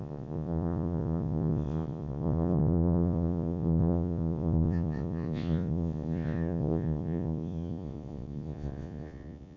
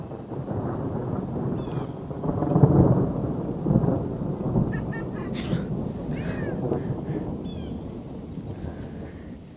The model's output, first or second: first